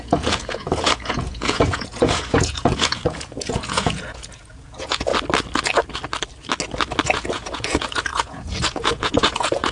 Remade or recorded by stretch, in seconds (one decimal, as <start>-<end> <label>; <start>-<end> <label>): 0.0-5.1 remade; 5.1-7.0 recorded; 7.0-9.7 remade